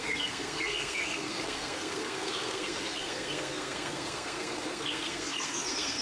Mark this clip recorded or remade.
remade